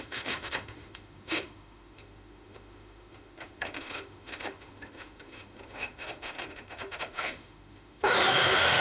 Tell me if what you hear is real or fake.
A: fake